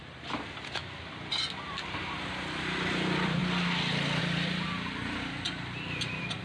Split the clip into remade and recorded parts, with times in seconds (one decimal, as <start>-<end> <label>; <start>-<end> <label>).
0.0-0.8 remade; 0.8-1.7 recorded; 1.7-3.4 remade; 3.4-4.2 recorded; 4.2-6.4 remade